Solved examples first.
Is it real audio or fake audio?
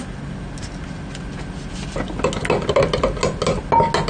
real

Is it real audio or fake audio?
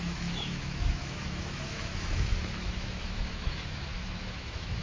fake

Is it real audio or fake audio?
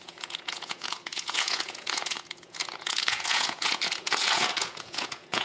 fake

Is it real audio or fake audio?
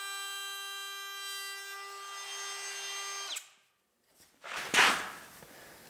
real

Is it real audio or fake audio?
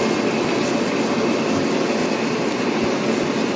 real